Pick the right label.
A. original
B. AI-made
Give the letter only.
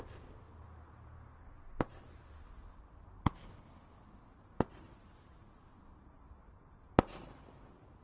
A